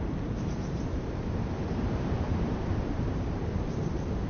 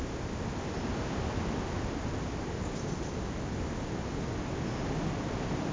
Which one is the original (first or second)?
second